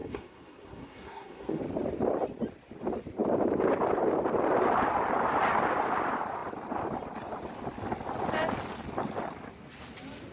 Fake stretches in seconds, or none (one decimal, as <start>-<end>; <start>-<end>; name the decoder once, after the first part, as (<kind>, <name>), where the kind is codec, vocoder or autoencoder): 0.0-1.6 (codec, SNAC)